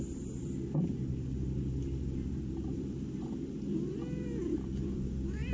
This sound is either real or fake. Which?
fake